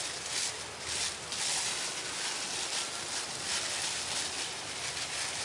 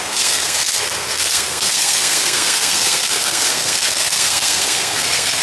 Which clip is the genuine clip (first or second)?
first